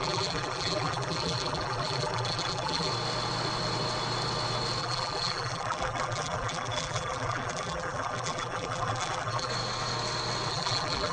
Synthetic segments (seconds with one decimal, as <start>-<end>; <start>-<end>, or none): 0.0-2.9; 4.8-9.5; 10.5-11.1